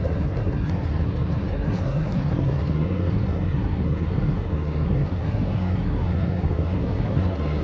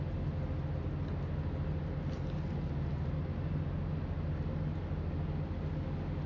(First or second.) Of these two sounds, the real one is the second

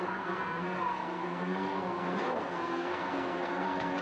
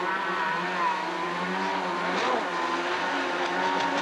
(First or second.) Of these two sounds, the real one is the second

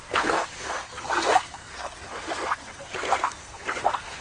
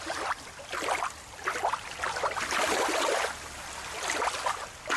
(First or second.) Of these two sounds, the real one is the second